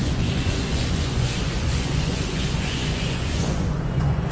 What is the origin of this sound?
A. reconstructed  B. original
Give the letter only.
A